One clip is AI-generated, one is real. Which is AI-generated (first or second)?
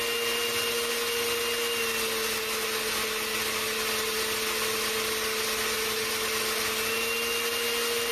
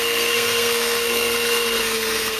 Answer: second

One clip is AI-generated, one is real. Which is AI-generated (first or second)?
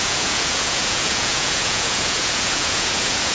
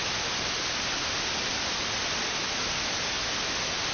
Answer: first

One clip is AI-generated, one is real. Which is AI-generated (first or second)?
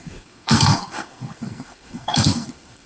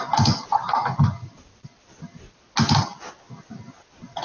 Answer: first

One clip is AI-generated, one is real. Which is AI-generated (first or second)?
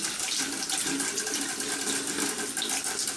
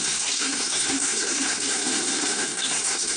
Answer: second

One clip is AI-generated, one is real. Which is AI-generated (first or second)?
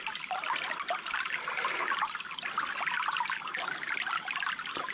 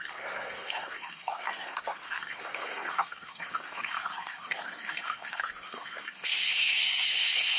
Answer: second